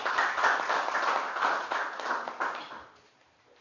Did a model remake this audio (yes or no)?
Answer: no